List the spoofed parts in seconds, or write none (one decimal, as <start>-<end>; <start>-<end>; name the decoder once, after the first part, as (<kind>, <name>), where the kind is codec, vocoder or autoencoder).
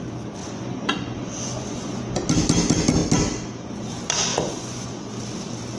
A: 0.4-2.3 (vocoder, Vocos); 4.3-5.1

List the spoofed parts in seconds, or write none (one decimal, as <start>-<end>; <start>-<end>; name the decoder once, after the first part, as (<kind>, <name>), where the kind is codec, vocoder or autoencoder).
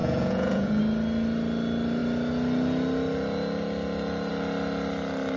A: 0.0-0.8 (vocoder, Vocos)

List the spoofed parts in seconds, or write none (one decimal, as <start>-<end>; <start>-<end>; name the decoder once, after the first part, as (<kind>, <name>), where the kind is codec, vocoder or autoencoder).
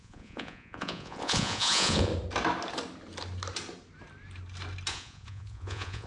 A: 0.0-2.1 (vocoder, Vocos); 4.9-6.1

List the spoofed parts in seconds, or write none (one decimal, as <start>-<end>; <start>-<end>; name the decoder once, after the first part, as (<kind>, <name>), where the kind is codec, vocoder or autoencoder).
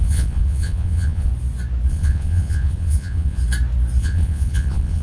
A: 0.0-1.3 (vocoder, Vocos); 1.9-3.4; 4.0-5.0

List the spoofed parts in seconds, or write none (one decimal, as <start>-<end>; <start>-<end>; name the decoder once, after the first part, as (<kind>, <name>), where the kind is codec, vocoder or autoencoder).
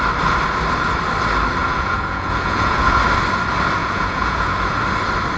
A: 1.6-3.0 (vocoder, Vocos); 3.8-4.8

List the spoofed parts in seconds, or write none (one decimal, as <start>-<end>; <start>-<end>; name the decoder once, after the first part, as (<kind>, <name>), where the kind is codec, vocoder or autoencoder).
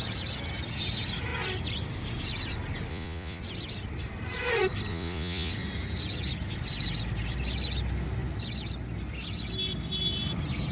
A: 2.9-3.4 (vocoder, Vocos); 4.9-5.5